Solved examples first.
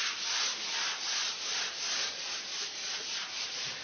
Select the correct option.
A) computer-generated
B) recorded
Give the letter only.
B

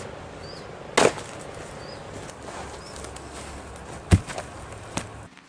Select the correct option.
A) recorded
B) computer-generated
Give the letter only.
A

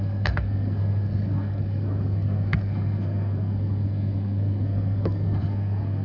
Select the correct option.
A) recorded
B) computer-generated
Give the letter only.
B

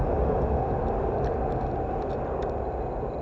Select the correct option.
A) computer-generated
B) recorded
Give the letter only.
B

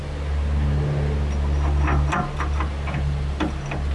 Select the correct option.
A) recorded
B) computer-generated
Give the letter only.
A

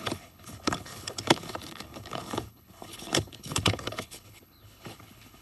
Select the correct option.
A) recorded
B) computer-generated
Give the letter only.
B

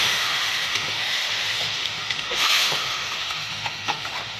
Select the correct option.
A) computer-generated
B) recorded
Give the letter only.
A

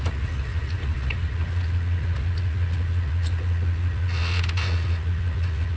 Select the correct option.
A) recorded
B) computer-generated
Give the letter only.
B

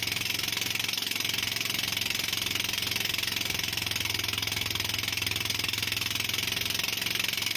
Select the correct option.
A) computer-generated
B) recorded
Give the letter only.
B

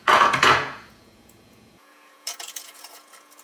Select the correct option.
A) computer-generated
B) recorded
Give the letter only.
A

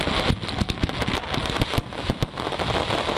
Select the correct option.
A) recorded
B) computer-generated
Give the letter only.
A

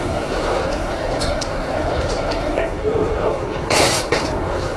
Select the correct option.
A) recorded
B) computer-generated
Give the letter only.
B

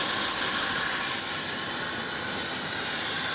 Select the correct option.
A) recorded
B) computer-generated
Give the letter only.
A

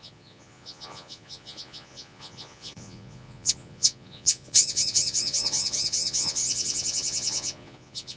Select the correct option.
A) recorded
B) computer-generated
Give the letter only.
B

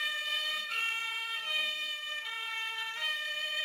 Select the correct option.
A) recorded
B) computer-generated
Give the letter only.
B